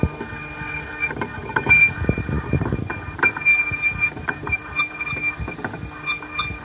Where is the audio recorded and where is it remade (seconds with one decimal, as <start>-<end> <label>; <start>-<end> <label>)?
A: 0.0-1.3 recorded; 1.3-5.3 remade; 5.3-6.6 recorded